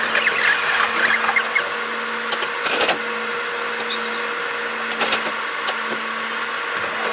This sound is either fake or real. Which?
real